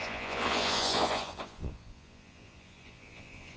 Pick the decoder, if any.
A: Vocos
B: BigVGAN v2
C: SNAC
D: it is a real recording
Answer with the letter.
A